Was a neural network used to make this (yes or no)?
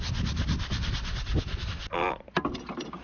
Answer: no